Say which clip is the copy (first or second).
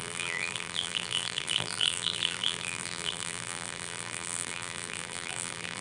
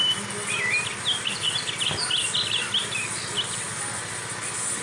first